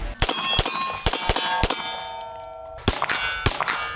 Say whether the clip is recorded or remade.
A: recorded